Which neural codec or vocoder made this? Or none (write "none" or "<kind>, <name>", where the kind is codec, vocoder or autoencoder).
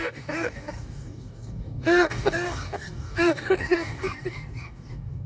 codec, DAC